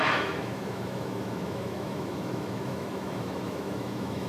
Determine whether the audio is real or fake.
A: fake